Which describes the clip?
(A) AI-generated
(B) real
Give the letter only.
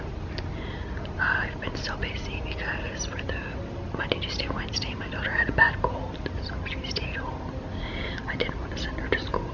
B